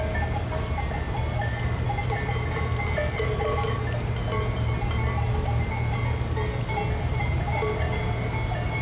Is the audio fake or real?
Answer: real